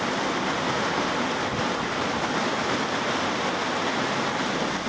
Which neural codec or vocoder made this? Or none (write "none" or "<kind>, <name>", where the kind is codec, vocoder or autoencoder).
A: none